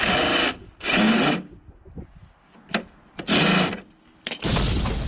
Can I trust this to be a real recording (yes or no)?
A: yes